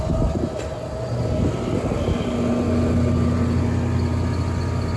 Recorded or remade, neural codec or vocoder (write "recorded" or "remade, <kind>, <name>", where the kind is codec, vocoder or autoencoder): recorded